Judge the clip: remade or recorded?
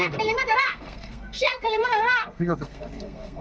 remade